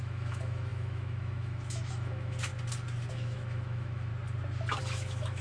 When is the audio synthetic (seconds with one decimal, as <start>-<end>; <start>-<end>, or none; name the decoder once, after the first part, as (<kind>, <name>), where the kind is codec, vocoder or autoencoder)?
0.0-2.5 (autoencoder, DAC-VAE); 3.1-4.1; 4.8-5.4